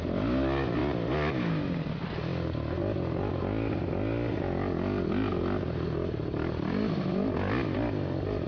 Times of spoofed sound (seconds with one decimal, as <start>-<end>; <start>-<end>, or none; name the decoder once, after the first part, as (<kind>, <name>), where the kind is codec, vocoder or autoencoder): none